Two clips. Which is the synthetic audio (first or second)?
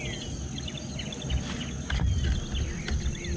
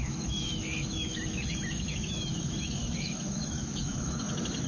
second